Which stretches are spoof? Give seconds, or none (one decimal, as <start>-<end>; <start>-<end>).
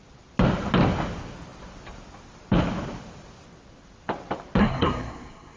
4.6-5.6